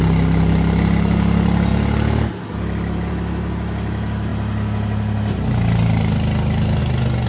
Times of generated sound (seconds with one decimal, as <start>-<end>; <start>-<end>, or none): none